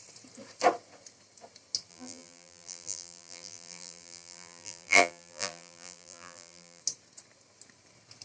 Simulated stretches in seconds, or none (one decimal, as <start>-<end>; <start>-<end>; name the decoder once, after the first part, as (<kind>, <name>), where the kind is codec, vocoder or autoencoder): 1.9-6.8 (vocoder, BigVGAN v2)